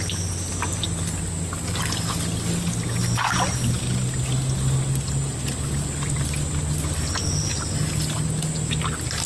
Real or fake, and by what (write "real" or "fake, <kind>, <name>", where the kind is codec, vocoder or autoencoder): real